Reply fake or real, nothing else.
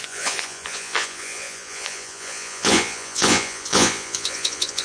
fake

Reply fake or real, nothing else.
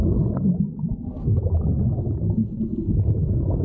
real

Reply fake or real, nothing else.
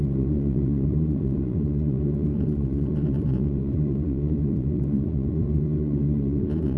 fake